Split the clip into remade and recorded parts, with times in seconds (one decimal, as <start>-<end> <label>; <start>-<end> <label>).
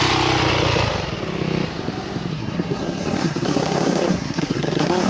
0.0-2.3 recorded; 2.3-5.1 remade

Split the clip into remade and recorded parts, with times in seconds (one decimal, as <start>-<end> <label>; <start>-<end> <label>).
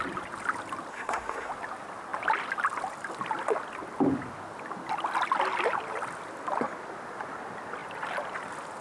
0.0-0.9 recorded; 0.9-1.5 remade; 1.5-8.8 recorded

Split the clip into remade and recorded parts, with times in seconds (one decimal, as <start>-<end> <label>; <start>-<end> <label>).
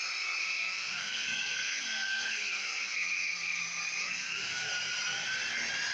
0.0-0.4 recorded; 0.4-3.6 remade; 3.6-4.0 recorded; 4.0-4.7 remade; 4.7-5.9 recorded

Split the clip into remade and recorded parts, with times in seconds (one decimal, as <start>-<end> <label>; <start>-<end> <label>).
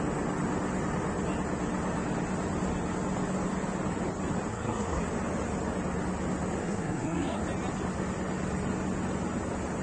0.0-4.5 recorded; 4.5-5.0 remade; 5.0-6.6 recorded; 6.6-7.4 remade; 7.4-9.8 recorded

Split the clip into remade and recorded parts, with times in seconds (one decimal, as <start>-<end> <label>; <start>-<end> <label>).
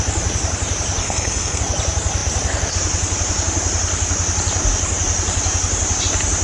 0.0-1.0 recorded; 1.0-1.6 remade; 1.6-6.4 recorded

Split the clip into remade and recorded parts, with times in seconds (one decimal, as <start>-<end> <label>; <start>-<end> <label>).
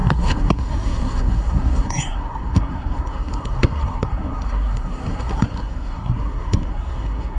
0.0-7.4 remade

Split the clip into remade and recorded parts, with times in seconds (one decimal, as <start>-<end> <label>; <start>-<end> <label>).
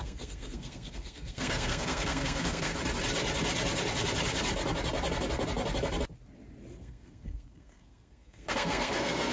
0.0-2.7 remade; 2.7-6.8 recorded; 6.8-9.3 remade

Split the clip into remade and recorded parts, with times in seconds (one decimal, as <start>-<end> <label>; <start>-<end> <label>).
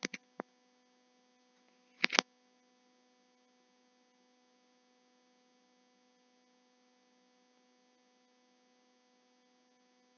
0.0-10.2 recorded